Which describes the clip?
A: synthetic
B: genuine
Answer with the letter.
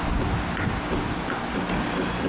B